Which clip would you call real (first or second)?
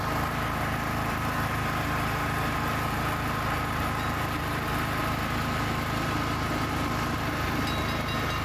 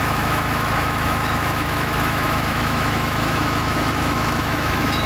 first